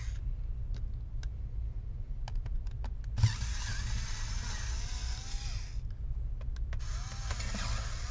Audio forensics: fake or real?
real